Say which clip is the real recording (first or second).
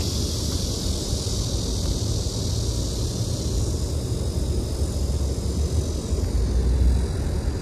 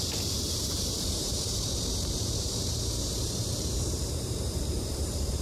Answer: first